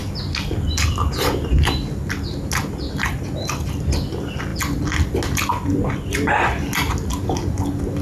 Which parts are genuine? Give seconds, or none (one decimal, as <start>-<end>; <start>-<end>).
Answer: 0.0-8.0

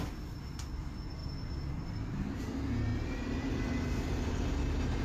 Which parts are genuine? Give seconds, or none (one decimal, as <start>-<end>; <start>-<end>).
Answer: 0.0-2.9; 4.3-5.0

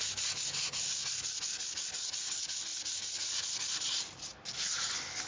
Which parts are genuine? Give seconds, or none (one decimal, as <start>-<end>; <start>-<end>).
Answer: 0.0-5.3